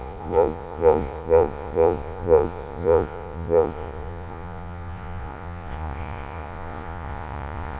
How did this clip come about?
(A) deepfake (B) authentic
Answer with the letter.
A